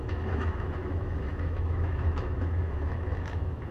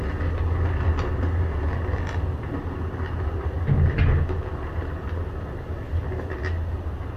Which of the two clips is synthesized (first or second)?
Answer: first